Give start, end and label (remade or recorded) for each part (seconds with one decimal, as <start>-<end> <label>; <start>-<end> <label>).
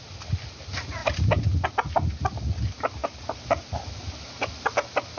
0.0-5.2 recorded